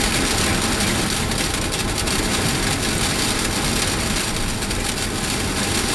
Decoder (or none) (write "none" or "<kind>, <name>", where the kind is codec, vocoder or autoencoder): none